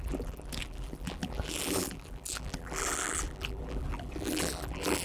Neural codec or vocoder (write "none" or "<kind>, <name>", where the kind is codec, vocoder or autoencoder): vocoder, BigVGAN v2